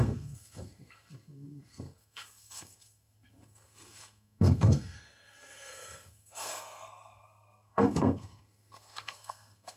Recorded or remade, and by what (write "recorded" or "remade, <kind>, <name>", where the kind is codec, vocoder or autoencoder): remade, codec, SNAC